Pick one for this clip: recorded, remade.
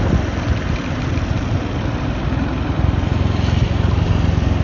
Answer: recorded